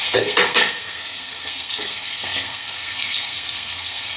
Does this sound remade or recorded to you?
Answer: remade